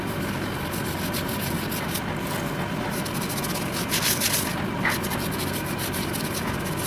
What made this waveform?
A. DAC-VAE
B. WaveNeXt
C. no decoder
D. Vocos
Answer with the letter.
C